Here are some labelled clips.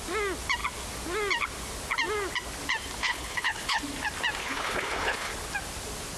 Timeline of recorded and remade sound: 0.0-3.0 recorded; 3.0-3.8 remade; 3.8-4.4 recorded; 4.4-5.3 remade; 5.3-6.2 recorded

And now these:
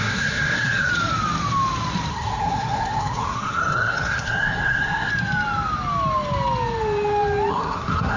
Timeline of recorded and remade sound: 0.0-0.9 remade; 0.9-2.1 recorded; 2.1-5.1 remade; 5.1-7.5 recorded; 7.5-8.2 remade

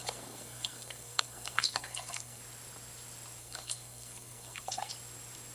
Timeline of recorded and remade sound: 0.0-2.4 remade; 2.4-3.4 recorded; 3.4-4.9 remade; 4.9-5.5 recorded

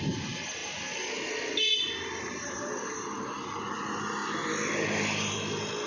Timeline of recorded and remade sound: 0.0-5.9 recorded

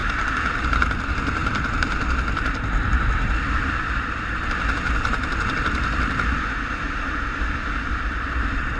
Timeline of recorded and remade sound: 0.0-8.8 recorded

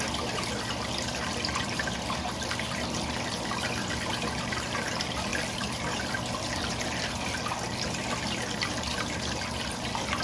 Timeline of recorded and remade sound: 0.0-10.2 recorded

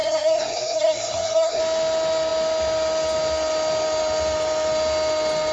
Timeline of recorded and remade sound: 0.0-1.6 remade; 1.6-5.5 recorded

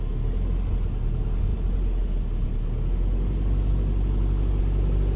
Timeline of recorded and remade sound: 0.0-5.2 recorded